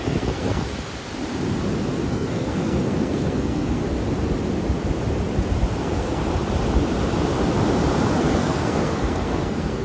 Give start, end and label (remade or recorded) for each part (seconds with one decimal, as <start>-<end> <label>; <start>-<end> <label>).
0.0-0.7 remade; 0.7-2.1 recorded; 2.1-3.8 remade; 3.8-5.8 recorded; 5.8-6.2 remade; 6.2-8.2 recorded; 8.2-9.8 remade